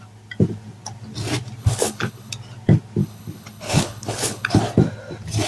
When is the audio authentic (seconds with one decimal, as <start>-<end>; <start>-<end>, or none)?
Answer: 0.0-1.6; 2.3-3.0; 4.6-5.5

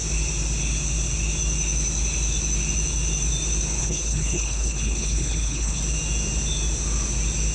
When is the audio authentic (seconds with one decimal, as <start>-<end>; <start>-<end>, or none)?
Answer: 0.0-3.8; 5.8-7.5

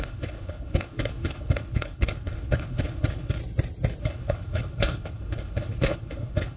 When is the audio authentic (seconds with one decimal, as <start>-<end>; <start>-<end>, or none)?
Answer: 3.4-4.0

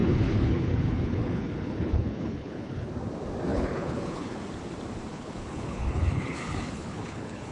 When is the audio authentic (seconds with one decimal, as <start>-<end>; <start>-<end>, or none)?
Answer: 2.9-3.5; 4.4-5.1

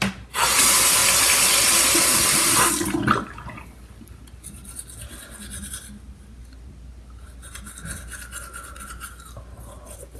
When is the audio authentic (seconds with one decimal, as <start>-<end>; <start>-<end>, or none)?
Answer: 0.0-10.2

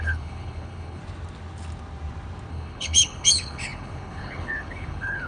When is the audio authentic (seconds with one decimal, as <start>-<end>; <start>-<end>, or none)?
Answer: 1.0-2.5

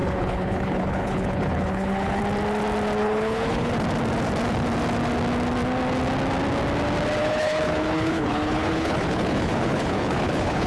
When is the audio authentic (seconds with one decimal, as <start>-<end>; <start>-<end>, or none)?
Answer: 2.2-3.0; 3.7-7.2

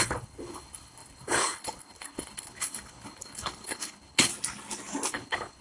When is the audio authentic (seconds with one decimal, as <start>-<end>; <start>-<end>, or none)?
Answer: 4.3-5.1